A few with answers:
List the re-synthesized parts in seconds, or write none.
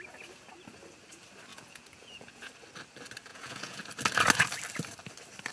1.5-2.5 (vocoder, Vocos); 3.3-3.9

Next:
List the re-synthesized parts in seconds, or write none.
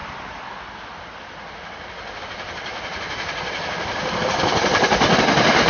2.2-5.7 (vocoder, BigVGAN v2)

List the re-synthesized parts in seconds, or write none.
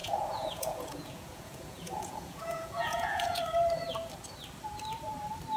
0.0-3.4 (vocoder, Vocos)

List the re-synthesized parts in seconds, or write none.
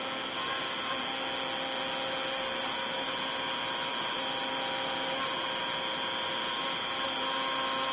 none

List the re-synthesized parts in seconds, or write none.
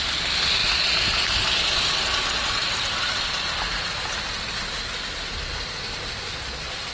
none